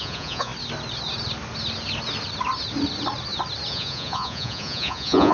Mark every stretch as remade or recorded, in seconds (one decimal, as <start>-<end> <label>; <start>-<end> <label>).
0.0-0.5 remade; 0.5-3.7 recorded; 3.7-5.3 remade